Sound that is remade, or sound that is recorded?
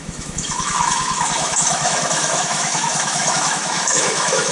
remade